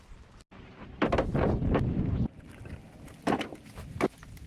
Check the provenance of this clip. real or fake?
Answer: real